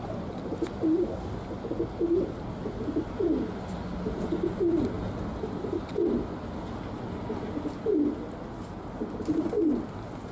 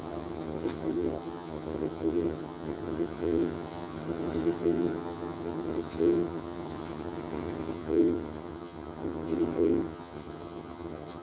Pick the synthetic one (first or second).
second